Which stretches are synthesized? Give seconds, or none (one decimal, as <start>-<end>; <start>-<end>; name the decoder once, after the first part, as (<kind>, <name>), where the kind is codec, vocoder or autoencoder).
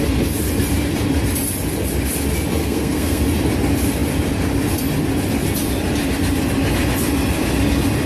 2.6-3.2 (codec, SNAC)